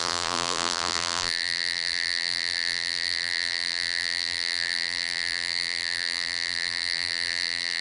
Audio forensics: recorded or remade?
remade